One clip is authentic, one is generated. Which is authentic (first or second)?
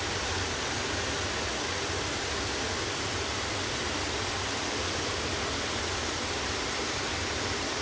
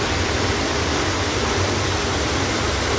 second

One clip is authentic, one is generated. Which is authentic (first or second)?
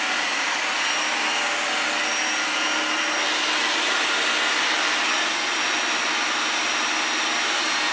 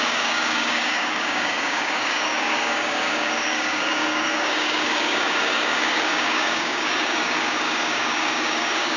first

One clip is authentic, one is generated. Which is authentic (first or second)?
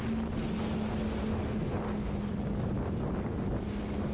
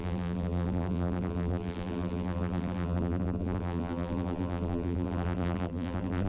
first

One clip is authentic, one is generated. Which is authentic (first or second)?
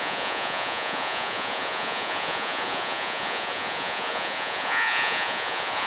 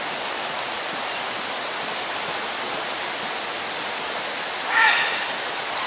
second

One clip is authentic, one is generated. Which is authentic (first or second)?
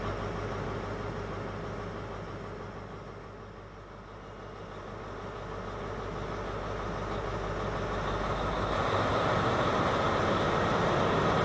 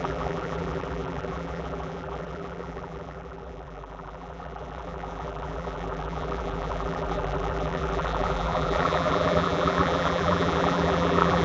first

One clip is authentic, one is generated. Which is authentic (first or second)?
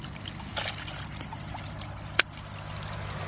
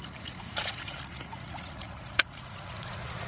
first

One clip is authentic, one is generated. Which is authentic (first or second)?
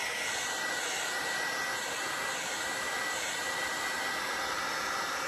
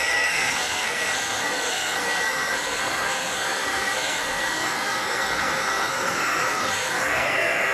first